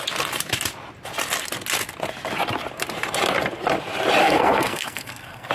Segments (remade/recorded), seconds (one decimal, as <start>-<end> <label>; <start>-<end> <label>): 0.0-4.2 recorded; 4.2-5.5 remade